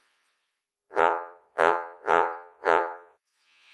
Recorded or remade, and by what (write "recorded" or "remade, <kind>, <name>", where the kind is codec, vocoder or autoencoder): remade, vocoder, Vocos